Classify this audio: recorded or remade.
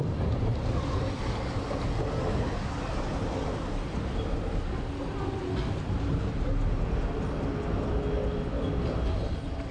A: recorded